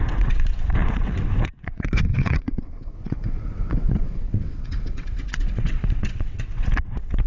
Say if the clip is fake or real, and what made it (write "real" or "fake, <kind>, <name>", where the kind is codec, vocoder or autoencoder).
fake, vocoder, WaveNeXt